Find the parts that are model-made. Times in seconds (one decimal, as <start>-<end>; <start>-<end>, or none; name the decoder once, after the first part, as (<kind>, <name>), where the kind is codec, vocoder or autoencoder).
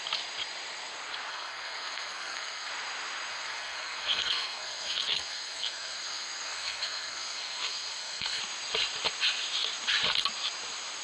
1.3-2.7 (codec, SNAC); 3.3-8.4